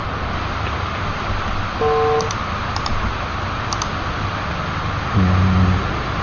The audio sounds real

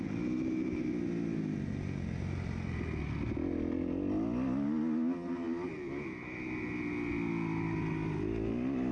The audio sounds real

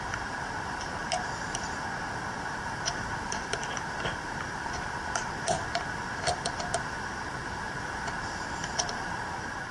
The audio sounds real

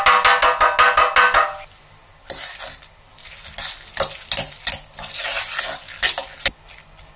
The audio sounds real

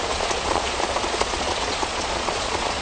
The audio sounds fake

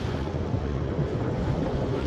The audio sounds fake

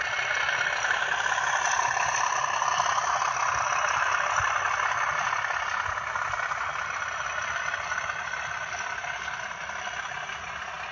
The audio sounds real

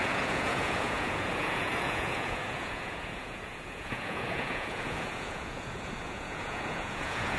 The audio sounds fake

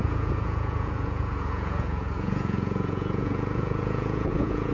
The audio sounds fake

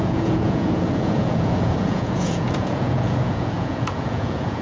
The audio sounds fake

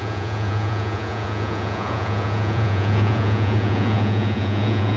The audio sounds fake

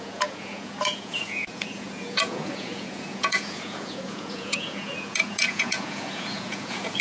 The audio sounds fake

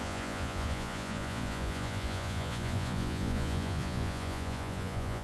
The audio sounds fake